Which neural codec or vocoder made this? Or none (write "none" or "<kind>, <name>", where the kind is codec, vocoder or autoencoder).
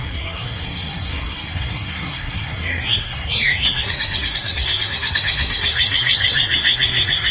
codec, SNAC